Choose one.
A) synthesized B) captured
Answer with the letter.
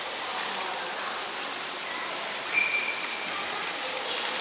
B